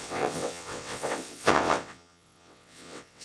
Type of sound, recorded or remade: remade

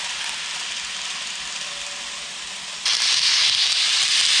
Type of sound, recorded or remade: recorded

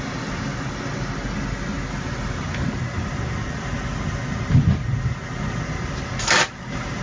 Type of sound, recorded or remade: recorded